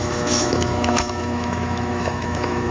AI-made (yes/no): yes